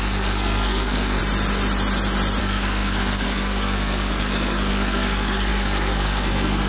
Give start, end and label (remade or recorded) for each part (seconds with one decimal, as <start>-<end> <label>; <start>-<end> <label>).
0.0-1.2 remade; 1.2-2.4 recorded; 2.4-6.7 remade